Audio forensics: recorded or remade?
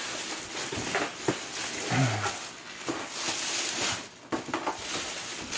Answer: recorded